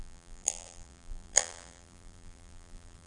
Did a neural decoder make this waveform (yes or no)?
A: yes